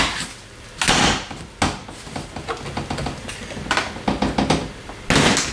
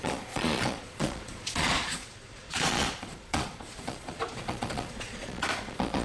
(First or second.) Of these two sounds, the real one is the first